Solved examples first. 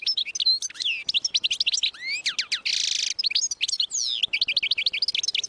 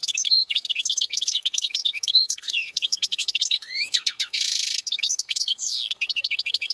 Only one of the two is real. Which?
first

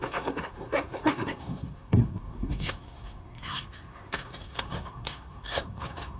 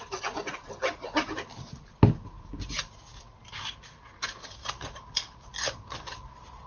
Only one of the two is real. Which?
second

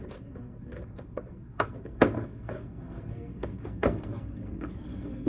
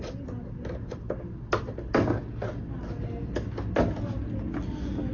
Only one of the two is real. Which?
second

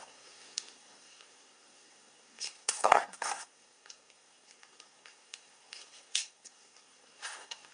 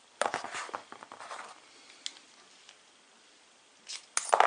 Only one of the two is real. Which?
second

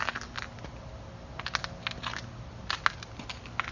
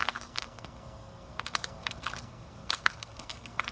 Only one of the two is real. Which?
first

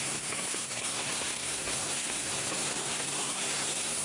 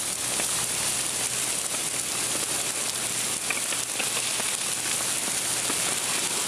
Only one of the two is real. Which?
second